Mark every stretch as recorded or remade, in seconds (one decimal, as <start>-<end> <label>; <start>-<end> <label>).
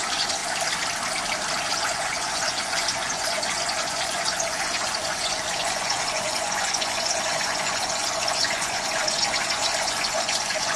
0.0-0.4 remade; 0.4-1.7 recorded; 1.7-10.8 remade